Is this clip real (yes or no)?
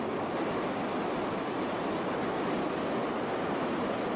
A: yes